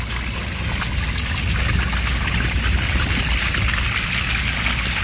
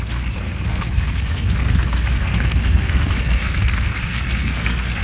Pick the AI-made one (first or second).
second